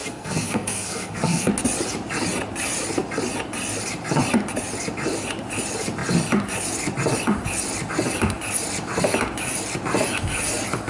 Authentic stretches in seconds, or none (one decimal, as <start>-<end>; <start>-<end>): 1.5-10.9